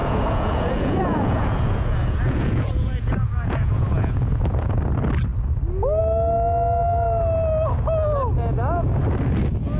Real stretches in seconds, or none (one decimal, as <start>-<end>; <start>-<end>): 4.8-9.8